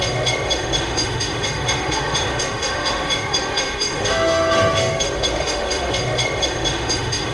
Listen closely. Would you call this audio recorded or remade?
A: remade